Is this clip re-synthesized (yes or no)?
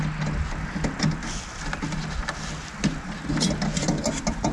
no